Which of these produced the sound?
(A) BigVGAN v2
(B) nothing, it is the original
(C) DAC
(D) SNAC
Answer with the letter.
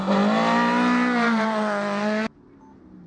B